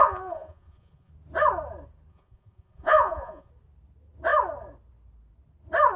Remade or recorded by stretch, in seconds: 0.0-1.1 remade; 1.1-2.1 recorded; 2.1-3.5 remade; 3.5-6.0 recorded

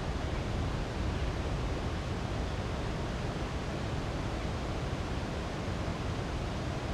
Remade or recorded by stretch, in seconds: 0.0-5.9 recorded; 5.9-6.9 remade

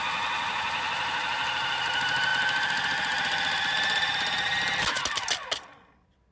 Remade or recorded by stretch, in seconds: 0.0-6.3 recorded

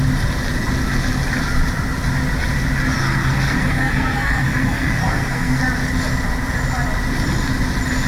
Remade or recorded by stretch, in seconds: 0.0-3.0 recorded; 3.0-5.6 remade; 5.6-8.1 recorded

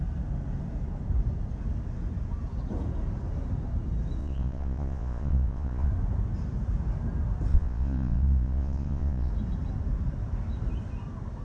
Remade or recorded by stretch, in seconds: 0.0-4.2 recorded; 4.2-5.9 remade; 5.9-7.5 recorded; 7.5-9.3 remade; 9.3-11.4 recorded

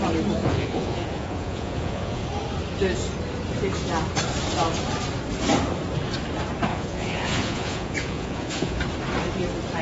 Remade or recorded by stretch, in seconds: 0.0-0.4 recorded; 0.4-2.2 remade; 2.2-6.7 recorded; 6.7-8.8 remade; 8.8-9.8 recorded

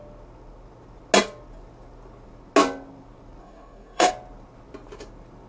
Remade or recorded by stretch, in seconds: 0.0-3.4 recorded; 3.4-4.1 remade; 4.1-5.5 recorded